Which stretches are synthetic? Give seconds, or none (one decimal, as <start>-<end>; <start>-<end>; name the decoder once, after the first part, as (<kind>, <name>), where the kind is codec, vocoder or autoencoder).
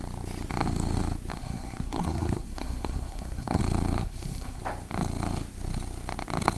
1.3-3.6 (codec, SNAC); 4.0-4.6